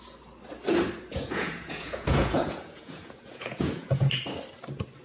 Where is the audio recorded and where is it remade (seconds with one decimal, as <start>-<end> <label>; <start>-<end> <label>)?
0.0-1.1 recorded; 1.1-4.1 remade; 4.1-5.0 recorded